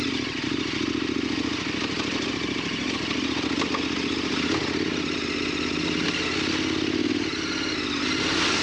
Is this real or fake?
real